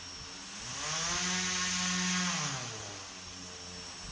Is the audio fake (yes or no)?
no